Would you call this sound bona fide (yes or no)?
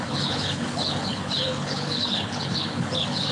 no